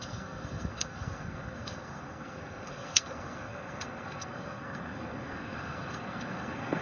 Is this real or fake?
fake